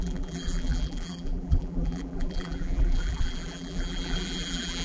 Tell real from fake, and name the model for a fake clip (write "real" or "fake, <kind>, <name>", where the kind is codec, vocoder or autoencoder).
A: fake, vocoder, BigVGAN v2